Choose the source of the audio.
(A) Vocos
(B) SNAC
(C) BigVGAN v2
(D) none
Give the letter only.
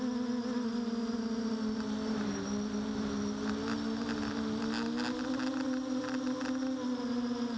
D